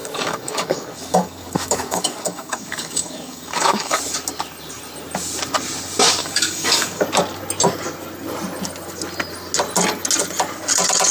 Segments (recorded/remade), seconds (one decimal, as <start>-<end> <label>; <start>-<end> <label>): 0.0-4.0 remade; 4.0-6.2 recorded; 6.2-7.0 remade; 7.0-11.1 recorded